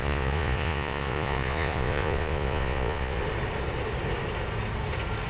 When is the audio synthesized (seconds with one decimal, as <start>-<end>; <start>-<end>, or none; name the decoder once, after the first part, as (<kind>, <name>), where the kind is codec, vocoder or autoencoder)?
0.0-3.2 (vocoder, Vocos)